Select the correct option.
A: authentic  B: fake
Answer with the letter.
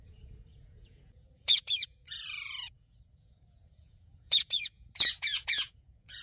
B